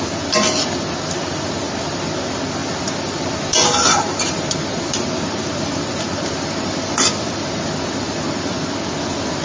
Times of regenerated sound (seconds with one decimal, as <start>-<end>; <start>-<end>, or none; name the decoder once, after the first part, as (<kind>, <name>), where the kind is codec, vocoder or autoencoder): 2.6-7.3 (vocoder, BigVGAN v2)